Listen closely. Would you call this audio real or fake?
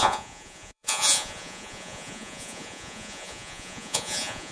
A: fake